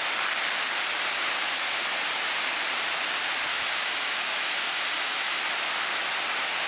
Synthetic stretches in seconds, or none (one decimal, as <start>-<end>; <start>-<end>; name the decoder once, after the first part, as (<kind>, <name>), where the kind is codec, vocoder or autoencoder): 3.5-5.4 (autoencoder, DAC-VAE)

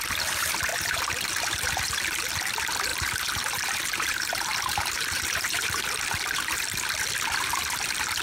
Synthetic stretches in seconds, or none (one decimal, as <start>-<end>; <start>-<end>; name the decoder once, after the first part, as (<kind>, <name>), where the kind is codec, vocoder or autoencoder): 0.7-2.0 (vocoder, BigVGAN v2); 2.9-5.8